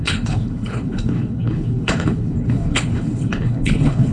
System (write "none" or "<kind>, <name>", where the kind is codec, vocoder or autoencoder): codec, HILCodec